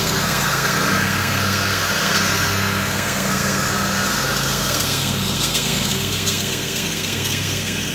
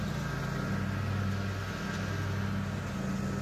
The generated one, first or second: first